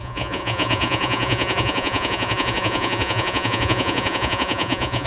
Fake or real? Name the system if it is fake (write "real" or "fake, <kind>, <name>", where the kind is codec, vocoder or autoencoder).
fake, vocoder, Vocos